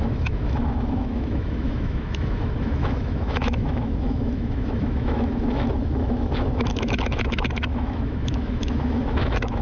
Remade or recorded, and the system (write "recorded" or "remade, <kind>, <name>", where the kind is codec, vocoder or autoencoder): remade, autoencoder, DAC-VAE